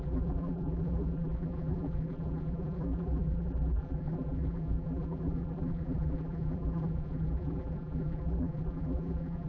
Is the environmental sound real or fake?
fake